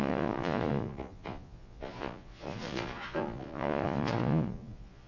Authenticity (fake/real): fake